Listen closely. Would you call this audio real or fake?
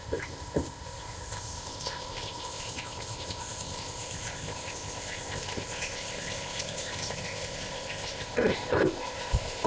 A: fake